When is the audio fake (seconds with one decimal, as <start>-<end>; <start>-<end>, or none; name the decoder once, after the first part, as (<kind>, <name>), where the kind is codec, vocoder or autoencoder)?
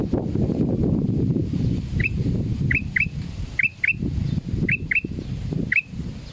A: 0.0-2.8 (vocoder, BigVGAN v2)